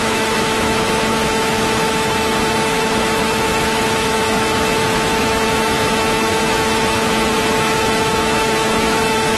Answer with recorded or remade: remade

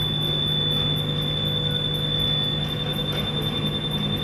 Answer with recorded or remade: recorded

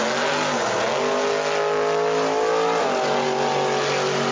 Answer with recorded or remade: recorded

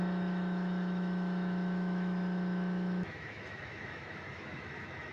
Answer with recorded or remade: remade